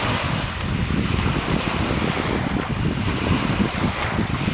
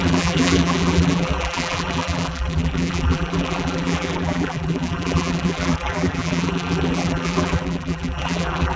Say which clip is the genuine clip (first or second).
first